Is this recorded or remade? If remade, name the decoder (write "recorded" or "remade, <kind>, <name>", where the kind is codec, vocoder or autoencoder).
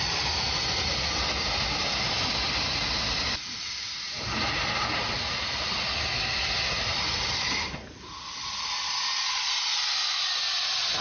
recorded